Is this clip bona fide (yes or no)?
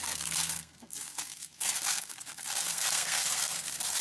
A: no